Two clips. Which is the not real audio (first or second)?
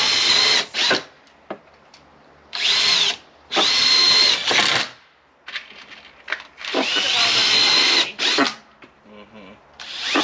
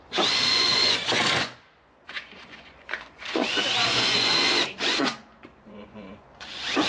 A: second